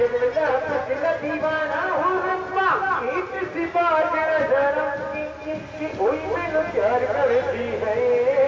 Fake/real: real